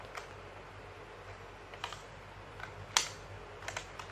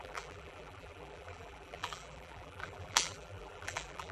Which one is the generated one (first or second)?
second